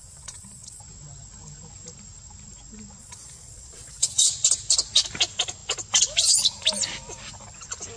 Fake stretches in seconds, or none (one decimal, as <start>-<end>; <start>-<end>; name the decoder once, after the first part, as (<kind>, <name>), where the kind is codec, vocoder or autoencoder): 0.0-0.8 (vocoder, Vocos); 3.0-4.3